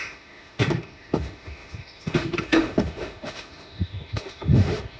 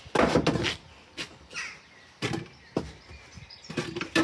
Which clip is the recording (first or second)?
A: second